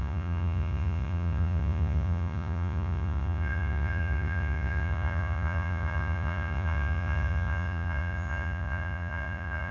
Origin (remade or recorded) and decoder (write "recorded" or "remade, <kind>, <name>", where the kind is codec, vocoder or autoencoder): remade, vocoder, Vocos